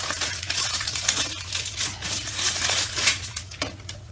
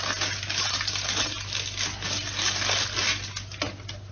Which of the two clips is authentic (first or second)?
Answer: second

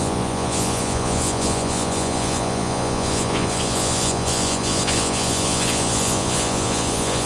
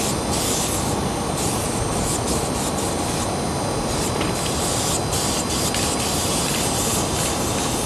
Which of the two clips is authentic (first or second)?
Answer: second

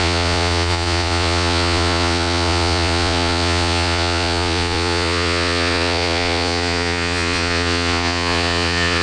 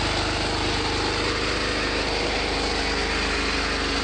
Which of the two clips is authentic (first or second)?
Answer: second